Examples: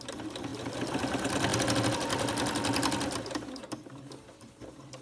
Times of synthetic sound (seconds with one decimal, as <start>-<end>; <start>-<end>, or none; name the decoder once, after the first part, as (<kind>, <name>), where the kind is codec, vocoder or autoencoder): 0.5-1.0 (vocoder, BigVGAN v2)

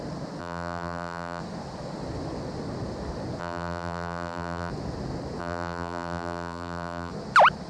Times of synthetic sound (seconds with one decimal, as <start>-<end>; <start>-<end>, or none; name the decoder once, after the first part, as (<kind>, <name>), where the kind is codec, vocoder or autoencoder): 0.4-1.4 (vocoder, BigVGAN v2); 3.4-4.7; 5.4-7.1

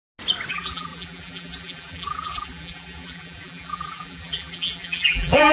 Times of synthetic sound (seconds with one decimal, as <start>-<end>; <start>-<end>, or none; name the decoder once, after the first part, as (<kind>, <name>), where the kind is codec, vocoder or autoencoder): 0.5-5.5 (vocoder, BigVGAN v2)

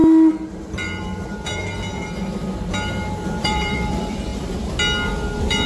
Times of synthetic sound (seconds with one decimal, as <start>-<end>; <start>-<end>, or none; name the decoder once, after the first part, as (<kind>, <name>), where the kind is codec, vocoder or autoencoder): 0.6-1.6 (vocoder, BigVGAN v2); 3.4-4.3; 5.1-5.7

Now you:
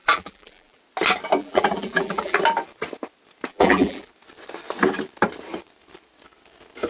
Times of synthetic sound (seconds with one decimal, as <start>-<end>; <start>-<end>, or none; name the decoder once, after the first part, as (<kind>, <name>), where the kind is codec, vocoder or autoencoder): 0.0-0.8 (vocoder, BigVGAN v2); 1.4-2.4; 3.5-4.1

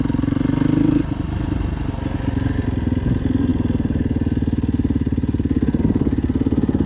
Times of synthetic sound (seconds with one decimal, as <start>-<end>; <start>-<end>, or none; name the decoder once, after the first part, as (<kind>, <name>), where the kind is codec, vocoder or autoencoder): none